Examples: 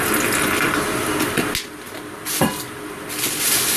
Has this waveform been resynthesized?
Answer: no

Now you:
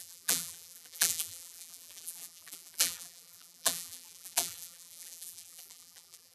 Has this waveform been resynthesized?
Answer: yes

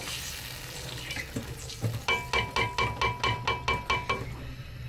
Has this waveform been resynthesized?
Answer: no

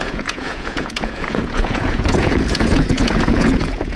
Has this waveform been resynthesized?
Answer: yes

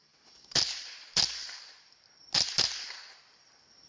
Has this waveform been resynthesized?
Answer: no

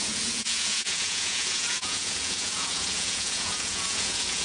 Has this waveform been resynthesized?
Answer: yes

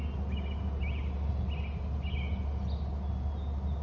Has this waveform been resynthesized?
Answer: no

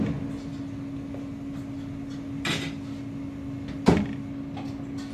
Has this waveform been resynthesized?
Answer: no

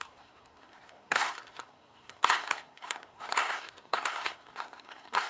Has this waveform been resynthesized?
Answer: yes